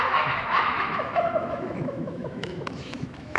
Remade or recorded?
remade